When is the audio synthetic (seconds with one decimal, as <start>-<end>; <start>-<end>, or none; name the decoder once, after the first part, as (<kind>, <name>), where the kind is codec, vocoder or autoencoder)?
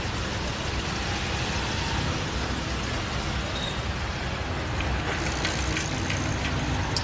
none